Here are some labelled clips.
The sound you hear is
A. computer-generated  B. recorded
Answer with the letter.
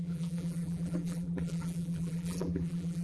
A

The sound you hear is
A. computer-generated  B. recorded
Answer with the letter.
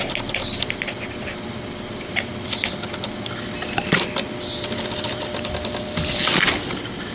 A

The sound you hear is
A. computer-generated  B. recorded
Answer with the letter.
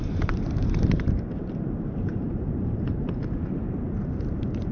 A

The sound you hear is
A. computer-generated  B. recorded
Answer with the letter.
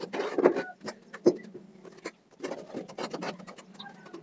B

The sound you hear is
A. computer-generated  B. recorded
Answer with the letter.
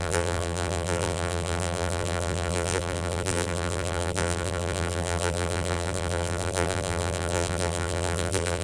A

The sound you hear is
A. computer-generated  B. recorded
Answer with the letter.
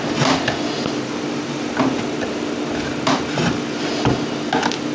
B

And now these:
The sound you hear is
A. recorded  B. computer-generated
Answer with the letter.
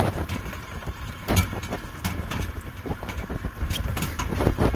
B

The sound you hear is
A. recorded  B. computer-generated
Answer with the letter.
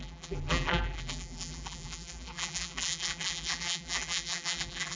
B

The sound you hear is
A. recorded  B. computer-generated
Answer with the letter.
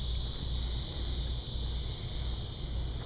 A